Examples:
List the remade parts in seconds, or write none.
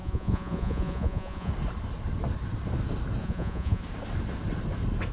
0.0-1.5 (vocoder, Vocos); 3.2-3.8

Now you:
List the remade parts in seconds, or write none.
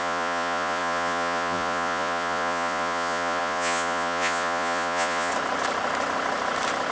0.0-5.3 (vocoder, Vocos)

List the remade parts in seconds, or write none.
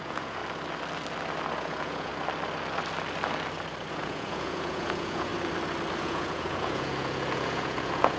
0.0-0.4 (vocoder, Vocos); 1.6-2.1; 3.9-5.3; 5.9-8.2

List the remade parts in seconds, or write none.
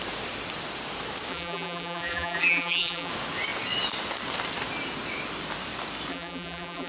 1.3-3.1 (vocoder, BigVGAN v2); 6.1-6.9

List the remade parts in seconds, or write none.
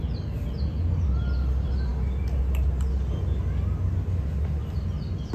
none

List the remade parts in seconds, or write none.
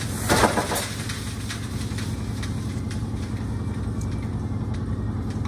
none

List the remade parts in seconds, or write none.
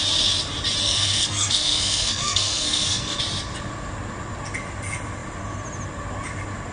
0.8-3.2 (codec, SNAC)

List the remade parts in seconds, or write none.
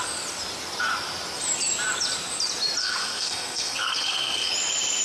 2.8-4.5 (codec, SNAC)